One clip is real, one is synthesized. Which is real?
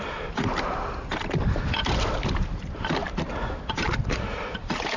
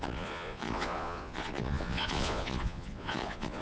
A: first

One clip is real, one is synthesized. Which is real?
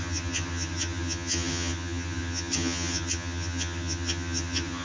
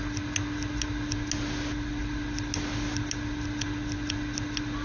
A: second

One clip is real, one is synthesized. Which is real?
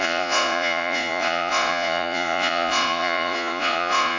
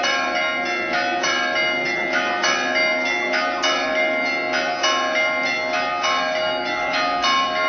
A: second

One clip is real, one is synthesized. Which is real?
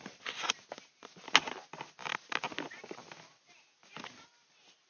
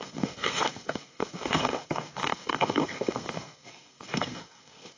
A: first